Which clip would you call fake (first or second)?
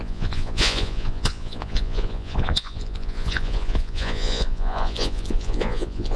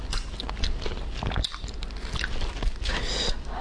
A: first